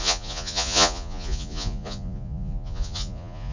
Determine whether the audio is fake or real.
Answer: fake